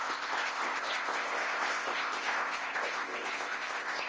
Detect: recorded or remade remade